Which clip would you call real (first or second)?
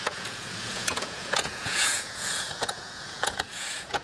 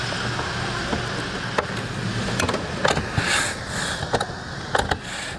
second